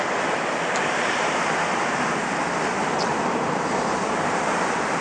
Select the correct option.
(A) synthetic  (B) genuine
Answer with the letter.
A